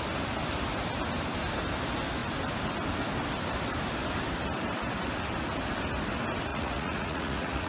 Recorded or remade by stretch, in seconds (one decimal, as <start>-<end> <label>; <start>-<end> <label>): 0.0-6.5 recorded; 6.5-7.7 remade